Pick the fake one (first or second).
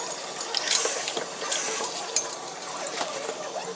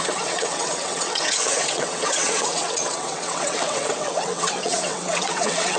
second